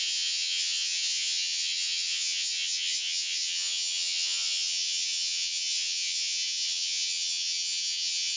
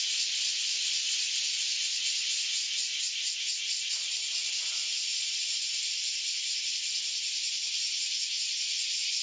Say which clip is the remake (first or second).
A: first